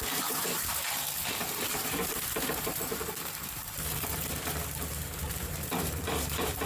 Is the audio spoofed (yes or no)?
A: yes